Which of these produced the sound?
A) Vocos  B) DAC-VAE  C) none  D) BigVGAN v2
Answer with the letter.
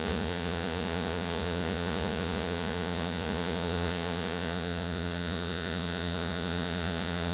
A